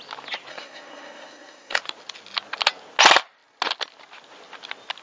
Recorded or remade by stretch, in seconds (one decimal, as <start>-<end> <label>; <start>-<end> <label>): 0.0-0.5 recorded; 0.5-1.8 remade; 1.8-5.0 recorded